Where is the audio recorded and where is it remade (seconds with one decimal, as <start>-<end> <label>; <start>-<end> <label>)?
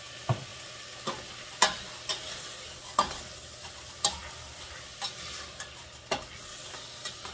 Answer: 0.0-7.3 recorded